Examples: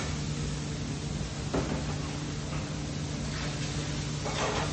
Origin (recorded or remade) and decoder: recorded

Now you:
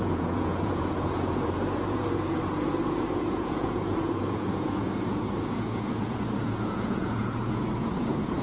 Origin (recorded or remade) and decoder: remade, vocoder, Vocos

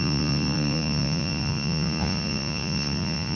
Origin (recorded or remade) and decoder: remade, vocoder, Vocos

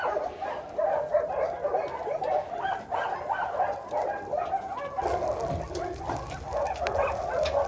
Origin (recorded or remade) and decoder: recorded